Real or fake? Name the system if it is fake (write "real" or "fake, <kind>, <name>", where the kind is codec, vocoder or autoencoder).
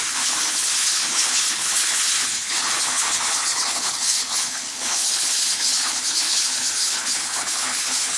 fake, codec, HILCodec